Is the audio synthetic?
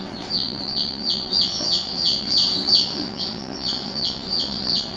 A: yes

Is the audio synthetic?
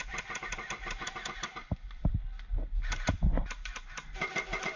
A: no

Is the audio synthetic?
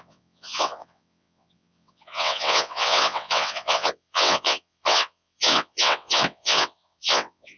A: yes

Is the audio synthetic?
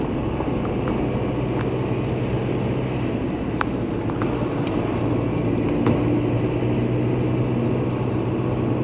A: no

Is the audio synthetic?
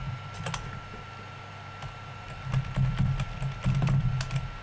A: no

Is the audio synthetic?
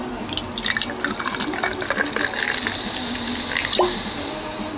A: no